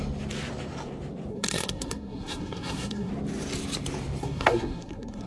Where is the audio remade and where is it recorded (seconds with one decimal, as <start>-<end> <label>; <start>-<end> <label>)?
0.0-1.3 recorded; 1.3-3.1 remade; 3.1-4.2 recorded; 4.2-5.3 remade